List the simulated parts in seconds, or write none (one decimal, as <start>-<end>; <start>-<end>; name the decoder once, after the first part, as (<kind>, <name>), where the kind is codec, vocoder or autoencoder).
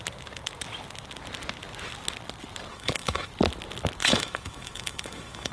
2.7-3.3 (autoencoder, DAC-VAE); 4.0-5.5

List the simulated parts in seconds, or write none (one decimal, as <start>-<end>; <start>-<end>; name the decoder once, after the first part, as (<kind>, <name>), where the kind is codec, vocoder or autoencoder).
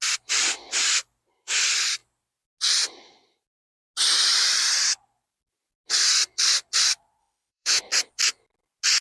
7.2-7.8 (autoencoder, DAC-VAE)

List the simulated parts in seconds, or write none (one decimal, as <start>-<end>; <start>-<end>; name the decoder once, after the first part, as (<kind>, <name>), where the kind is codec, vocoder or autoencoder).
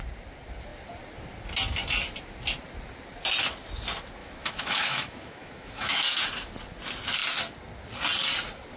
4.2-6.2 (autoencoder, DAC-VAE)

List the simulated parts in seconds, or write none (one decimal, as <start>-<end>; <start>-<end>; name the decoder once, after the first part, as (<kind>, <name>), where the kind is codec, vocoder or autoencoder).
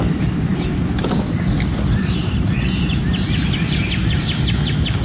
none